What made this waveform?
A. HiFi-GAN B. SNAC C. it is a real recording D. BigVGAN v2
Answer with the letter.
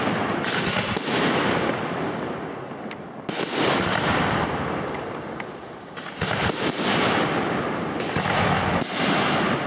C